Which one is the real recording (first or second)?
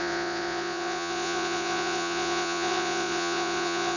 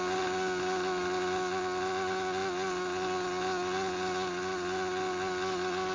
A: second